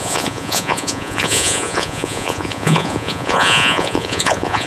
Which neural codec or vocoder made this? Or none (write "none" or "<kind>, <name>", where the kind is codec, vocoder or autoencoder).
vocoder, Vocos